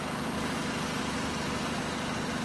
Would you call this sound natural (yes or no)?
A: yes